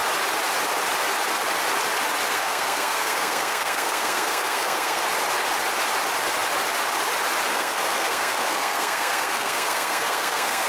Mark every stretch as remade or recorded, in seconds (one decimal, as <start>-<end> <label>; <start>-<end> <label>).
0.0-2.2 recorded; 2.2-5.0 remade; 5.0-7.5 recorded; 7.5-10.7 remade